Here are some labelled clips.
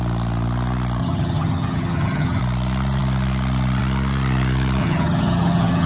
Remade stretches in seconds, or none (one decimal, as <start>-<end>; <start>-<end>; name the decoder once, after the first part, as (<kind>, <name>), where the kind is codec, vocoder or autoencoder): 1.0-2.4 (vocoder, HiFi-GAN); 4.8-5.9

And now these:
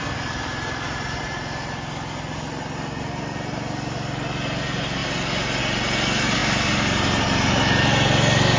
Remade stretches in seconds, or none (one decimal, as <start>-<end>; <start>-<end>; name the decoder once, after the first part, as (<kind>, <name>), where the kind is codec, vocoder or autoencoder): none

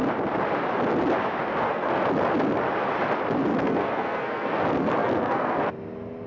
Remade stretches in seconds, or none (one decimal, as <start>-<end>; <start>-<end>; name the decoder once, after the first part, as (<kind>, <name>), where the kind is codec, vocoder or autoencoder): 1.5-2.0 (codec, SNAC); 3.5-4.6; 5.0-5.6

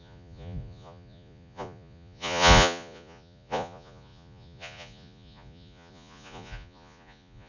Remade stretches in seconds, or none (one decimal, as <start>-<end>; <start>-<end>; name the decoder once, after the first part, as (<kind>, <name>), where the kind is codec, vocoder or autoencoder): 0.0-7.5 (vocoder, Vocos)